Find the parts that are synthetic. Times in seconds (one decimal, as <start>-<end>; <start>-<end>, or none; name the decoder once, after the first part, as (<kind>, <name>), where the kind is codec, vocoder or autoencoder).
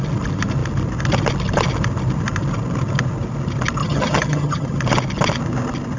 3.8-4.8 (vocoder, HiFi-GAN)